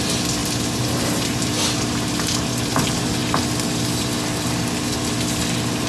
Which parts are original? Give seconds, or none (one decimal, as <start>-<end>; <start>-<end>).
0.0-0.4; 2.7-5.9